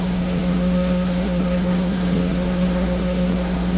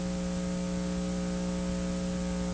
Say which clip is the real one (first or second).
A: second